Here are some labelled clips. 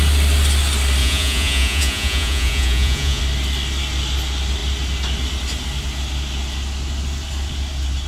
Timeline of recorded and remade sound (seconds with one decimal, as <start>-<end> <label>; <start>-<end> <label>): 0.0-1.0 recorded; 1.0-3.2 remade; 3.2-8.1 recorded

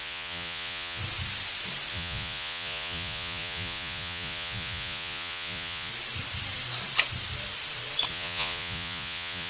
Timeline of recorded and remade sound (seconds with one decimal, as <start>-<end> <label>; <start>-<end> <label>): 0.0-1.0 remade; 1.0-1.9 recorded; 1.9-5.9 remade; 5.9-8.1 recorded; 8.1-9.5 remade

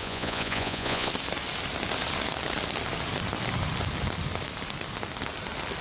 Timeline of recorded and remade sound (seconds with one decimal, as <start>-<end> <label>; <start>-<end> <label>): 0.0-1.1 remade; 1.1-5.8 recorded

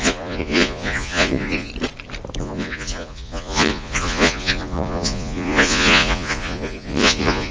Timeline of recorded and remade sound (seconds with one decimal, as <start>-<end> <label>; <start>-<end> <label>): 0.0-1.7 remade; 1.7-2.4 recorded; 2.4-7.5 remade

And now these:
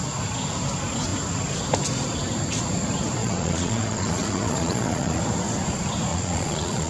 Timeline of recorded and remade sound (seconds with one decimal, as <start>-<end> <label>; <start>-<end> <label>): 0.0-3.2 recorded; 3.2-5.2 remade; 5.2-6.1 recorded; 6.1-6.9 remade

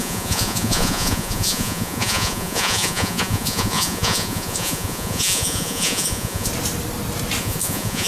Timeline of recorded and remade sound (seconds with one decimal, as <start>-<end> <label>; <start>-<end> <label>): 0.0-6.5 remade; 6.5-7.4 recorded; 7.4-8.1 remade